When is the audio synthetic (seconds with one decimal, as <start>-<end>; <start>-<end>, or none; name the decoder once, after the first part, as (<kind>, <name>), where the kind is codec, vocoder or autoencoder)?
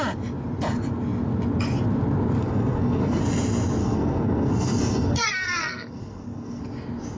2.4-3.2 (codec, SNAC); 3.8-6.6